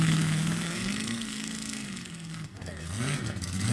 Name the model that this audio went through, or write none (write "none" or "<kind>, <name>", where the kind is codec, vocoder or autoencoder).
codec, SNAC